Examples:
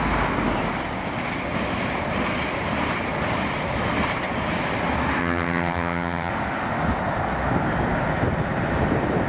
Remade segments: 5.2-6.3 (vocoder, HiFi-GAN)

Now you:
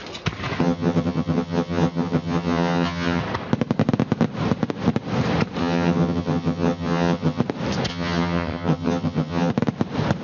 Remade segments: 0.6-3.2 (vocoder, HiFi-GAN); 5.6-7.4; 7.9-9.5

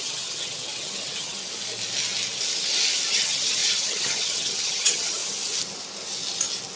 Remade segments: 0.0-1.4 (vocoder, HiFi-GAN); 3.1-5.2